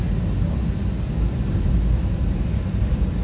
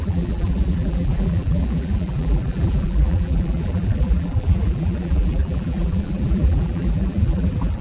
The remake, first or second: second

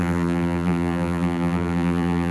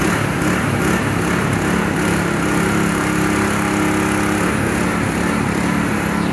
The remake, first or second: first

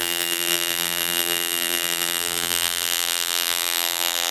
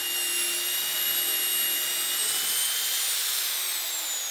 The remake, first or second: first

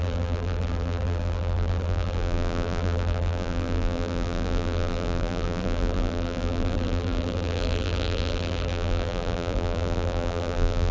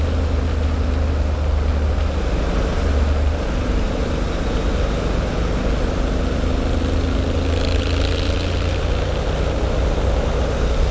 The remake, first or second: first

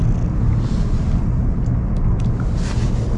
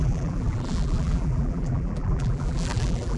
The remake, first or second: second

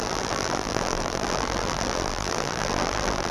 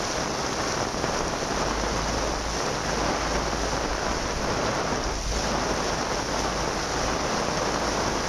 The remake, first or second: first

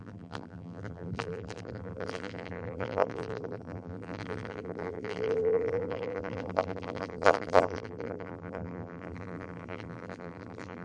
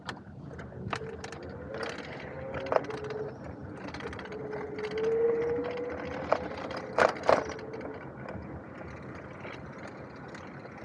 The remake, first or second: first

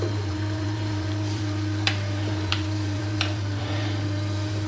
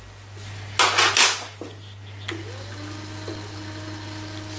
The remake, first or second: first